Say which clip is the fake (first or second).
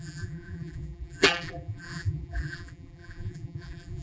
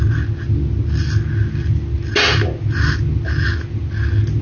first